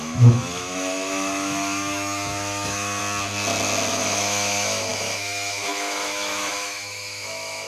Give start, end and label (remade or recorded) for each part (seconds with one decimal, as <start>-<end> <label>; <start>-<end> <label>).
0.0-3.0 remade; 3.0-3.9 recorded; 3.9-7.7 remade